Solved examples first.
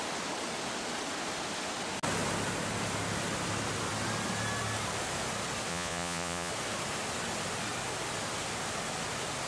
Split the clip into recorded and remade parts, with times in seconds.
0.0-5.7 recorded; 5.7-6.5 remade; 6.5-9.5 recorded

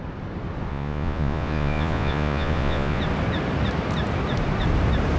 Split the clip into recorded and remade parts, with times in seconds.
0.0-0.7 recorded; 0.7-3.0 remade; 3.0-5.2 recorded

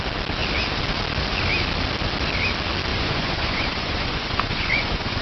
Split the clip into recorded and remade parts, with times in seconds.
0.0-2.9 recorded; 2.9-5.2 remade

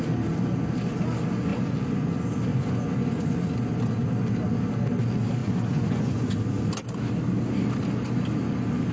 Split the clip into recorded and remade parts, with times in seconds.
0.0-1.5 recorded; 1.5-2.1 remade; 2.1-2.5 recorded; 2.5-3.4 remade; 3.4-5.4 recorded; 5.4-6.3 remade; 6.3-8.9 recorded

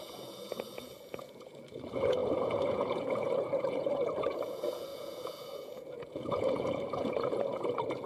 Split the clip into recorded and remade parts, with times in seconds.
0.0-8.1 remade

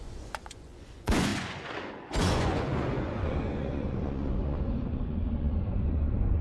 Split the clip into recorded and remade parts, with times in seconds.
0.0-6.4 remade

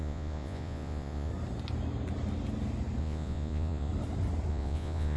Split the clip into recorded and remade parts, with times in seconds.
0.0-1.3 remade; 1.3-3.0 recorded; 3.0-3.9 remade; 3.9-4.5 recorded; 4.5-5.2 remade

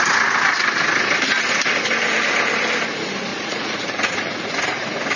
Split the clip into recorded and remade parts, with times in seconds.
0.0-3.3 recorded; 3.3-4.8 remade; 4.8-5.2 recorded